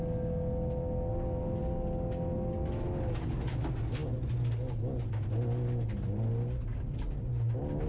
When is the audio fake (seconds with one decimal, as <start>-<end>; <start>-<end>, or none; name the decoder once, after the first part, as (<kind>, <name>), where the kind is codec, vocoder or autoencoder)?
none